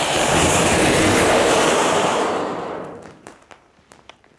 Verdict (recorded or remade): remade